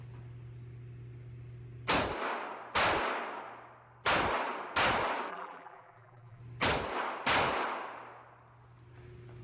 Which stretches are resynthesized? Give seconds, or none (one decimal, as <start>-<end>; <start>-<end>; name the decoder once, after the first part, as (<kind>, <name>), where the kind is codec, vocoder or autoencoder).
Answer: 5.3-6.4 (vocoder, BigVGAN v2)